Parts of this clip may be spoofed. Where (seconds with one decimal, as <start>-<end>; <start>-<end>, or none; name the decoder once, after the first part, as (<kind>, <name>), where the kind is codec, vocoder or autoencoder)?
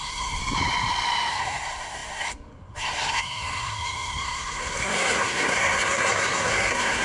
0.0-0.4 (codec, SNAC); 1.3-7.0